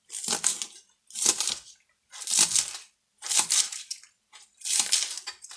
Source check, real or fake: real